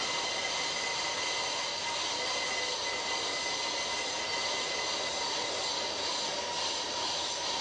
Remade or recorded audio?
recorded